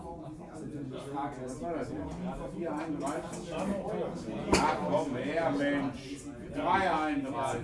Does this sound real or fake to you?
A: real